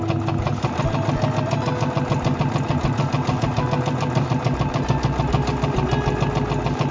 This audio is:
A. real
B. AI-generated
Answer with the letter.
A